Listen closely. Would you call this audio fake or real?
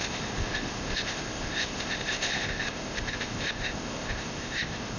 fake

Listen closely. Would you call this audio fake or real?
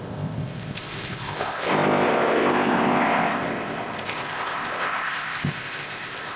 fake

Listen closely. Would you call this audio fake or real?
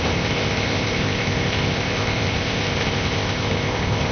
fake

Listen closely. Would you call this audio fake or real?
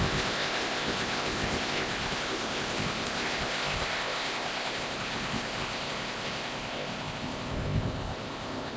fake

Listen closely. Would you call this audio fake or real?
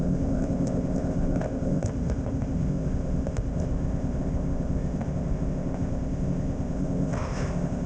fake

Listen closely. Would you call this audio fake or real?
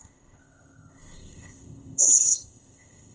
fake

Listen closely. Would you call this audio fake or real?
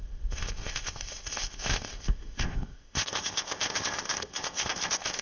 fake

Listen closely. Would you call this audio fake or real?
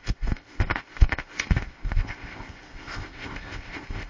fake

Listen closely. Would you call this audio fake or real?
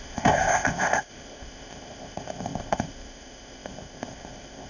fake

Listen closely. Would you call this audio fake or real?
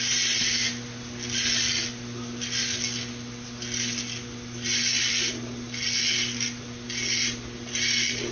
real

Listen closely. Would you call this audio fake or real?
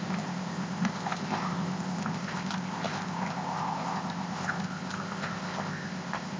fake